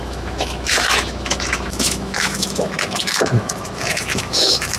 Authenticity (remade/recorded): remade